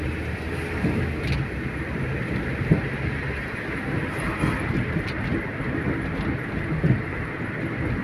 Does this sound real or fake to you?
real